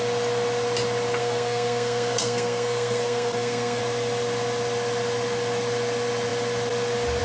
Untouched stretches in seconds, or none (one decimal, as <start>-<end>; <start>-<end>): 0.0-1.2; 3.8-7.2